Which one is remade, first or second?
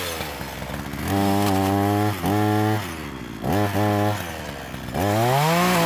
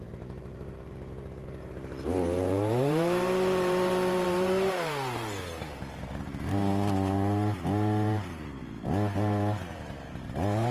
second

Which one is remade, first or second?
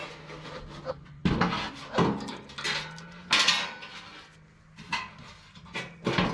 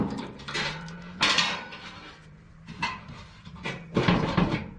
second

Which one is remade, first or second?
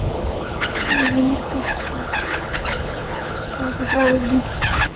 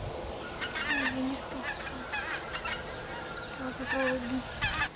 first